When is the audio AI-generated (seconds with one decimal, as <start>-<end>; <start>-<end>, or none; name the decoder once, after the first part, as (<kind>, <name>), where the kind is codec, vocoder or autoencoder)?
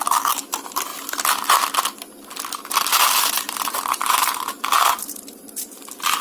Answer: 2.9-6.2 (vocoder, BigVGAN v2)